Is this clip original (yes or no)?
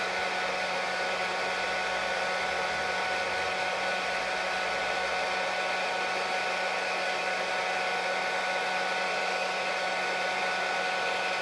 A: yes